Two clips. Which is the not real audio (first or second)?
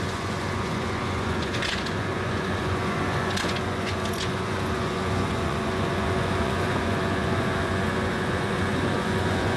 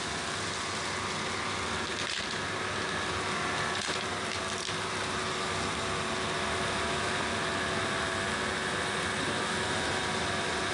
first